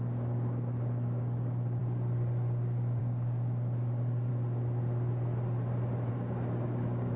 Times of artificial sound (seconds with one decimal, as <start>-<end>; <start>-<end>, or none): 0.0-4.3; 6.1-7.2

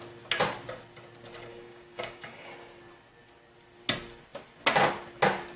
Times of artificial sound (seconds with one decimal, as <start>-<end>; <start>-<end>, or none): 1.5-2.5